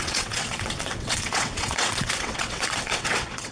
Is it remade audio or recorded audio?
remade